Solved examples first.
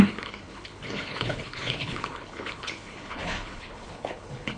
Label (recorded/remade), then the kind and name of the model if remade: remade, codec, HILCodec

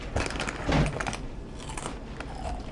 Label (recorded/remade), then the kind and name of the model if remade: recorded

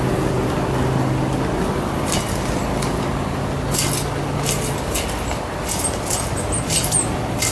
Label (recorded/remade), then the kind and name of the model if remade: recorded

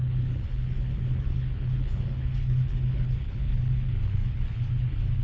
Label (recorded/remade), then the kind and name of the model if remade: remade, codec, HILCodec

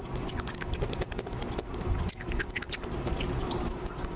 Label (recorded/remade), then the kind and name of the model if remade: recorded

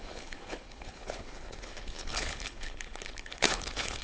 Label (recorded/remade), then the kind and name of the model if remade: remade, codec, HILCodec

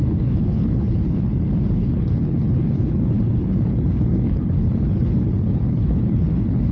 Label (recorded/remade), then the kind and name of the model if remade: remade, codec, HILCodec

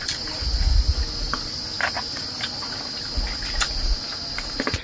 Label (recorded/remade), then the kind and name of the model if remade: recorded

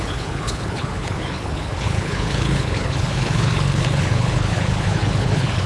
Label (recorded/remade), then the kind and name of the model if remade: remade, codec, HILCodec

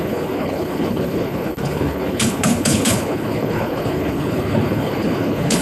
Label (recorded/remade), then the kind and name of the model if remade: remade, codec, HILCodec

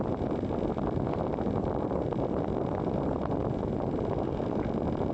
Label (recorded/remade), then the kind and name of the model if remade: recorded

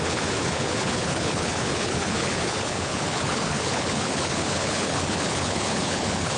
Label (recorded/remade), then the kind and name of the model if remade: remade, codec, HILCodec